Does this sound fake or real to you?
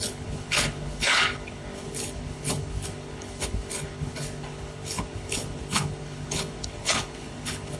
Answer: fake